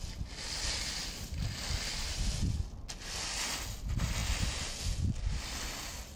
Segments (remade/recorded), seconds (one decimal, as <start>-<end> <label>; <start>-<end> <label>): 0.0-6.2 recorded